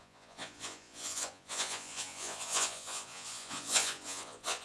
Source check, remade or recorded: remade